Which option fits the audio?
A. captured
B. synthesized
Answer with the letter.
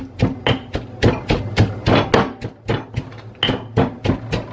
A